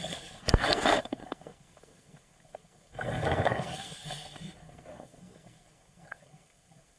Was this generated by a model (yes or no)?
yes